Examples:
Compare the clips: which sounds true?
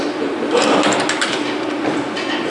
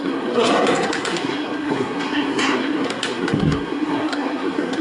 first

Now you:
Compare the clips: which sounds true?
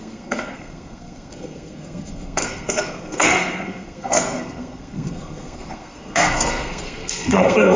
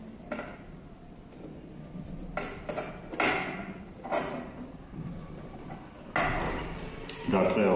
second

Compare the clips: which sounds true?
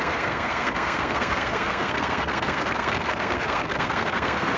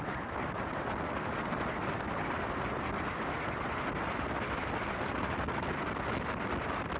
second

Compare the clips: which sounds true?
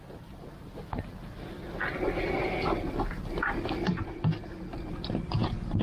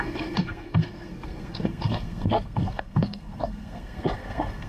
first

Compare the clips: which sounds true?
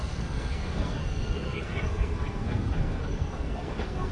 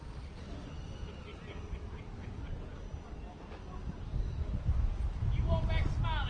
second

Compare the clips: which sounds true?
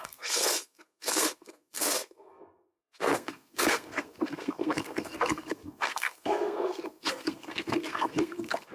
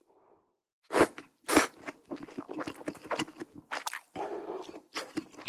second